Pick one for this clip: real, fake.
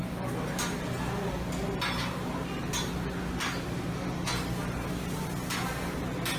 real